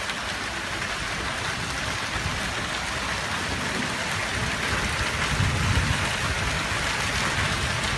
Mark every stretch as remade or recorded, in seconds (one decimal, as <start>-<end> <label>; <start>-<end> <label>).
0.0-8.0 recorded